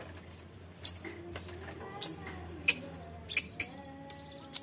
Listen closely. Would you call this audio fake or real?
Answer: real